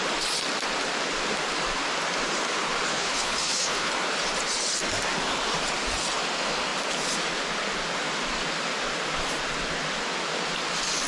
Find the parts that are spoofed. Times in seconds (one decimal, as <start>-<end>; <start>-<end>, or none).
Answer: 2.9-3.9